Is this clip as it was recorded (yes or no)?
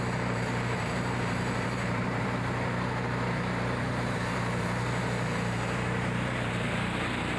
no